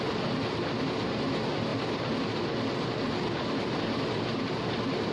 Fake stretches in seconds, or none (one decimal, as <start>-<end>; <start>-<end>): none